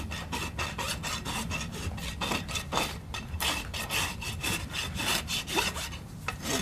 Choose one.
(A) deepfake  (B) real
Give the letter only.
B